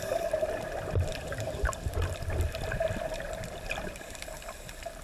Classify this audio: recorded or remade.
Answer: recorded